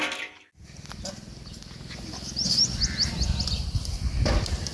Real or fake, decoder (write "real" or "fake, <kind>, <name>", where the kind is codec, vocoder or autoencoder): real